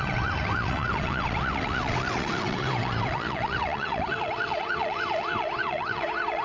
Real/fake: fake